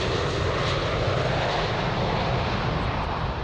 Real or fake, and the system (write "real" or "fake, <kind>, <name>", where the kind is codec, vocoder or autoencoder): real